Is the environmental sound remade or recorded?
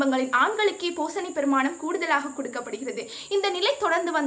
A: recorded